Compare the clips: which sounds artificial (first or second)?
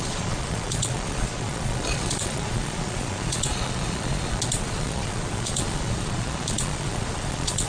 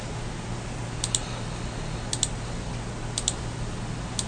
first